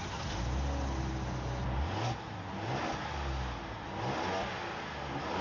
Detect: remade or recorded recorded